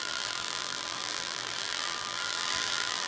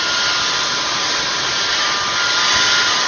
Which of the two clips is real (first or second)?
second